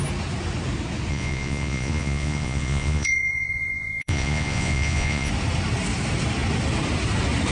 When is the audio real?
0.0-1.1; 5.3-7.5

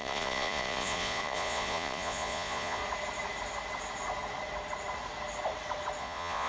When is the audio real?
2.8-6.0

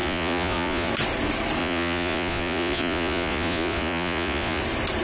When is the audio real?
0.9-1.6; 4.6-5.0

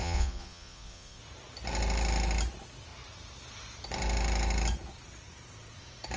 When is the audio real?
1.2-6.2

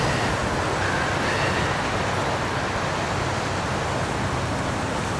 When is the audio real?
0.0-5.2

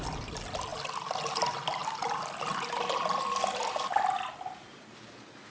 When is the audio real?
0.0-5.5

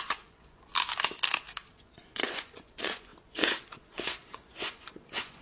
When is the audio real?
0.7-1.7